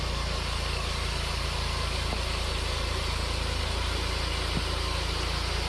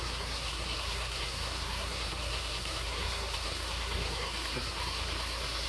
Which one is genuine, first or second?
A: first